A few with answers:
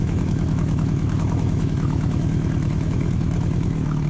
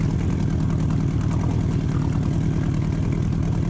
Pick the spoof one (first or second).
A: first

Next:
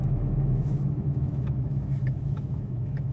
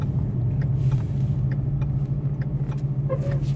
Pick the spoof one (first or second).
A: first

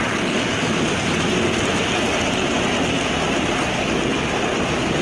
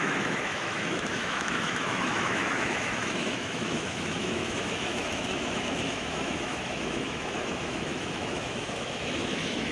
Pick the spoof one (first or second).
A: second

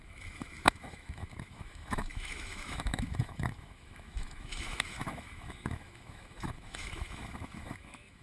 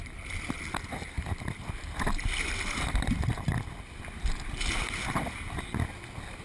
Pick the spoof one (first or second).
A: first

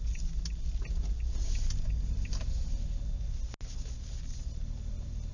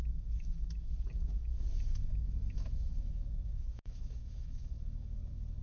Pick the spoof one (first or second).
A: second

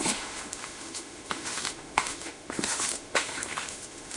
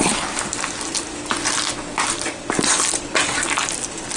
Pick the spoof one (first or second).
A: first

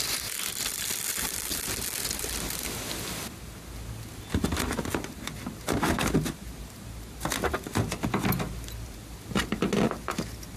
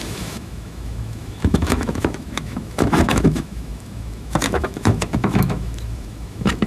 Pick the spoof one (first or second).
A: second